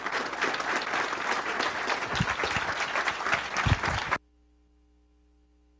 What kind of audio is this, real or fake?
real